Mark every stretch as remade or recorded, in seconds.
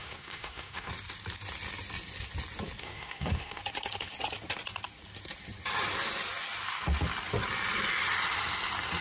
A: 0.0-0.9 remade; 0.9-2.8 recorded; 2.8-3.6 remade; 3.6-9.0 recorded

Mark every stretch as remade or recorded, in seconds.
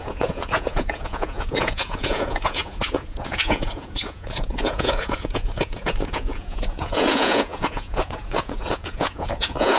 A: 0.0-9.8 remade